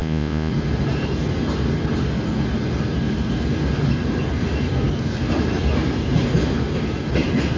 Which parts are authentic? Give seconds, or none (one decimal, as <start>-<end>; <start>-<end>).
0.5-7.6